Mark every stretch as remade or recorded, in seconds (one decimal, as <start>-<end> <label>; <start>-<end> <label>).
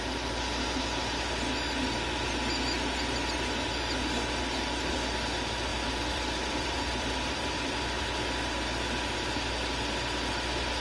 0.0-5.7 recorded; 5.7-7.8 remade; 7.8-10.8 recorded